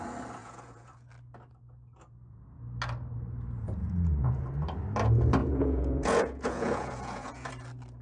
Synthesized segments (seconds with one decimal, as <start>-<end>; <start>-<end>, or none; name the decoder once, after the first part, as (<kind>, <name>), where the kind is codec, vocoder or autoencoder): 0.4-1.1 (vocoder, Vocos); 3.8-4.5; 5.4-7.5